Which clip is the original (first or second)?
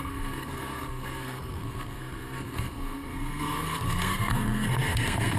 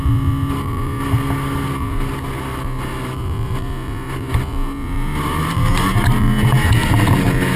second